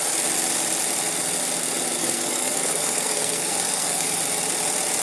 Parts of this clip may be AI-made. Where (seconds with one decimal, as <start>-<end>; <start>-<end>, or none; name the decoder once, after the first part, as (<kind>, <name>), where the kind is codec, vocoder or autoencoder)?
2.0-4.2 (codec, SNAC)